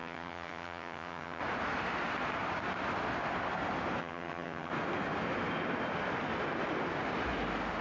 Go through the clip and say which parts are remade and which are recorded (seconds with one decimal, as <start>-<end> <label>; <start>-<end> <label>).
0.0-1.4 remade; 1.4-4.0 recorded; 4.0-4.7 remade; 4.7-7.8 recorded